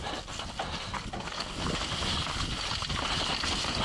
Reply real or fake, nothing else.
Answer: real